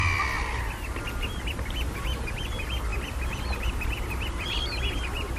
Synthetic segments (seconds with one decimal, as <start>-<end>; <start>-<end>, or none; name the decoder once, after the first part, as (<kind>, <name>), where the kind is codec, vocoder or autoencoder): none